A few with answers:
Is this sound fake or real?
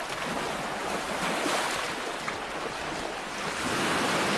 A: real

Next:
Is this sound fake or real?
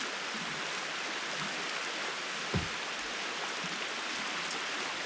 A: real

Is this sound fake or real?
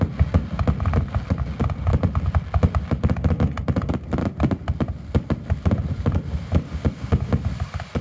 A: real